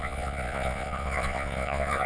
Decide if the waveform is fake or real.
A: fake